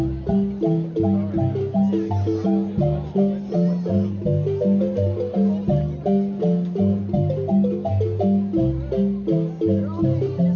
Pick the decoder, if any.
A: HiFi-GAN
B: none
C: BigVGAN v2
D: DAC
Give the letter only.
B